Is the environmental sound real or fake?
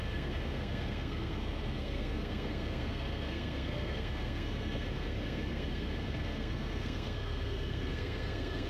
fake